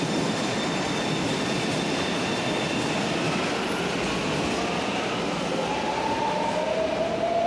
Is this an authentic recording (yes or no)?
yes